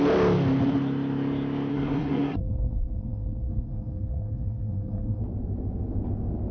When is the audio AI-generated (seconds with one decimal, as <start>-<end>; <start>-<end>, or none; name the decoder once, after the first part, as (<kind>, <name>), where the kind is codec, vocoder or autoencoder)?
1.7-5.2 (codec, SNAC)